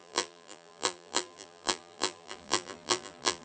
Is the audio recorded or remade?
remade